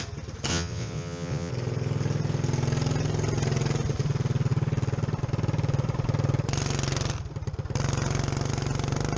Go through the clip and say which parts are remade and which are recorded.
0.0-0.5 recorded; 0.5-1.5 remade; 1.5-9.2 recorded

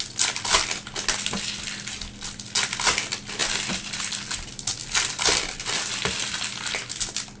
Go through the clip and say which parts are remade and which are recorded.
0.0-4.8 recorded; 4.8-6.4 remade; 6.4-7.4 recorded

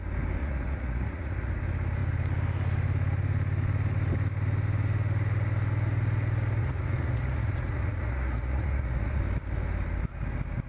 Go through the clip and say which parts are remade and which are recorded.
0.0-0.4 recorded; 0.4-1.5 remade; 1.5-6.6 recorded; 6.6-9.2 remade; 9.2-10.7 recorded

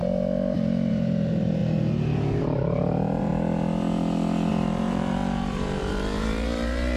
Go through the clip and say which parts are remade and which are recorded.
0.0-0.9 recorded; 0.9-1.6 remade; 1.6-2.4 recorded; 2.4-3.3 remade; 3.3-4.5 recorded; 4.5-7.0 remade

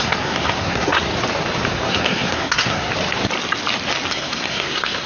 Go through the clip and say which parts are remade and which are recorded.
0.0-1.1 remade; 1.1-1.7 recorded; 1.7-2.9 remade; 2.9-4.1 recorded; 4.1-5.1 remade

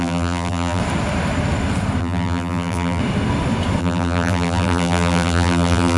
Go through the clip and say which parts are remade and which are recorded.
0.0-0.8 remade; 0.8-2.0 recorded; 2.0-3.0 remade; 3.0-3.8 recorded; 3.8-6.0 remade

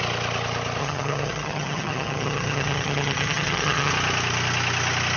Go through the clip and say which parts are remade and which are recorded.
0.0-0.8 recorded; 0.8-3.9 remade; 3.9-5.2 recorded

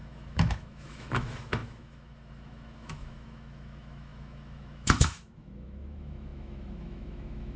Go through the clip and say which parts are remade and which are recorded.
0.0-7.6 remade